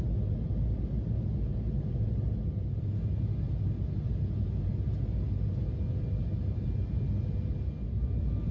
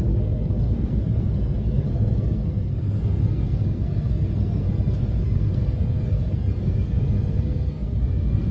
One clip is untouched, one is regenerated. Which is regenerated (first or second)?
second